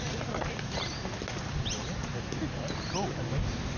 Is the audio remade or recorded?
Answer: recorded